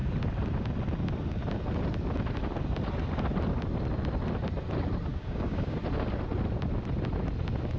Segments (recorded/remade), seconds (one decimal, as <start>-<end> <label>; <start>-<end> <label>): 0.0-5.1 recorded; 5.1-5.8 remade; 5.8-7.8 recorded